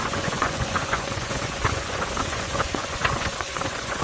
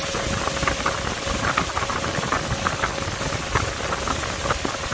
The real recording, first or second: second